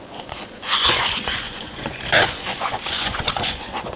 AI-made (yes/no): yes